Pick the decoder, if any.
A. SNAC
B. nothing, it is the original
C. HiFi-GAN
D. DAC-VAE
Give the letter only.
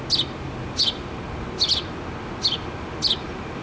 B